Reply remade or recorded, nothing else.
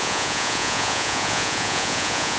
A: remade